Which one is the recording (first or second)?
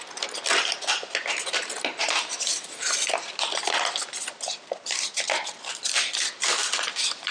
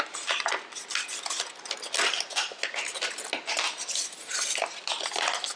second